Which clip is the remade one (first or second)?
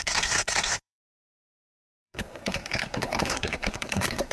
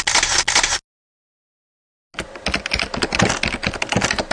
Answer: first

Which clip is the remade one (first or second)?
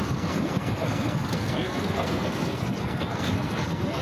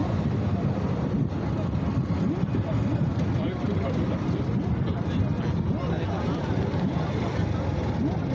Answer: first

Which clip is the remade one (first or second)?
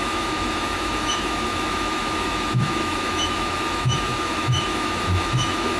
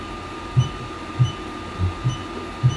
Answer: first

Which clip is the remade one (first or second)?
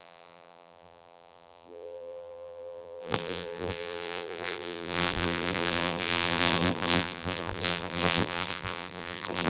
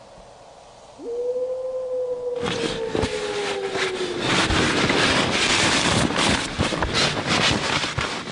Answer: first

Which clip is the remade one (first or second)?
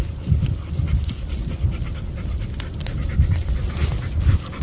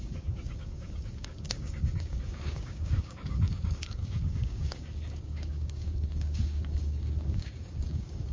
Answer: second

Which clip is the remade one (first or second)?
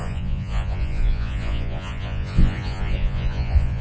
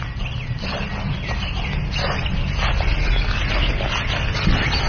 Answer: first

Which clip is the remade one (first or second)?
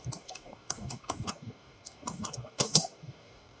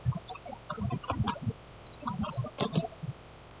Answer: first